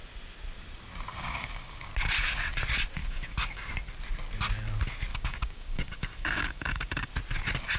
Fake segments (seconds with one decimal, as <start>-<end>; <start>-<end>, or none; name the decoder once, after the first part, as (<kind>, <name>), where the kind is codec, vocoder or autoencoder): 1.1-1.9 (codec, DAC); 3.0-3.7; 5.1-7.1